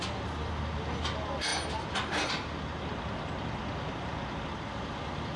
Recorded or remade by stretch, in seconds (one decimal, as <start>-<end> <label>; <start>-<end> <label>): 0.0-5.4 recorded